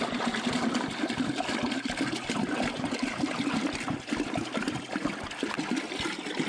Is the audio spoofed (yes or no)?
no